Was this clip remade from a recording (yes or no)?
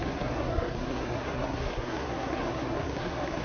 yes